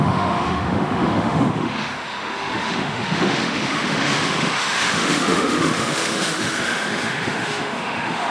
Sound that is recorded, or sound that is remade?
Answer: remade